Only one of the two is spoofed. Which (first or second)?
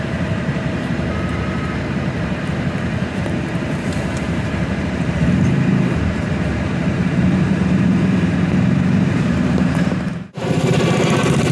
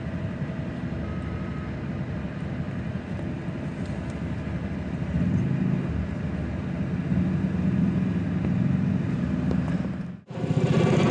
first